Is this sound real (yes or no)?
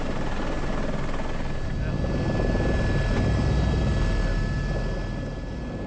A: yes